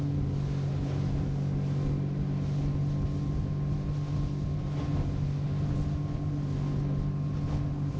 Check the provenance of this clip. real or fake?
real